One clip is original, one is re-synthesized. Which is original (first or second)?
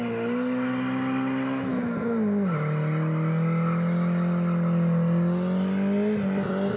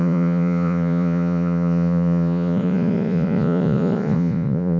first